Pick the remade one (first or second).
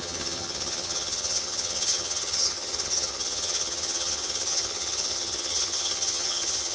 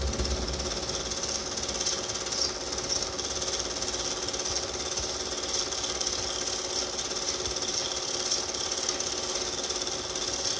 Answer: first